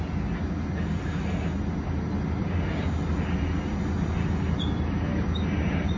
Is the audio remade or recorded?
recorded